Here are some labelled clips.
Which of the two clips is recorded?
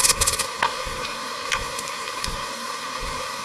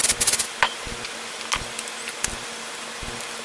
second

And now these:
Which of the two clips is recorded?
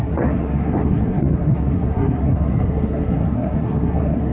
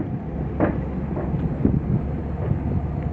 second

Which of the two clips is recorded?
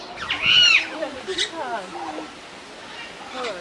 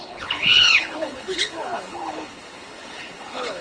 first